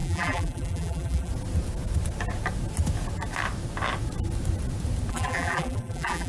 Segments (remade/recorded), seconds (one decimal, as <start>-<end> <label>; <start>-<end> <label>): 0.0-1.3 remade; 1.3-5.1 recorded; 5.1-6.3 remade